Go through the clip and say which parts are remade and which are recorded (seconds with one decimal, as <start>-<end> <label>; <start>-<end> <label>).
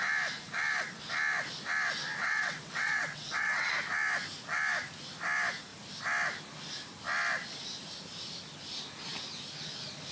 0.0-2.2 recorded; 2.2-3.7 remade; 3.7-10.1 recorded